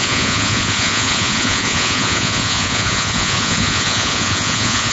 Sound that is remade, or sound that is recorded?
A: remade